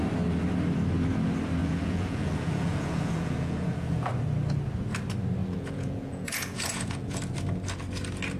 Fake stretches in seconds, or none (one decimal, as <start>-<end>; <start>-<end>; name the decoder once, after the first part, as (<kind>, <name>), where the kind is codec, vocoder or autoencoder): 1.6-4.1 (vocoder, Vocos); 5.4-7.2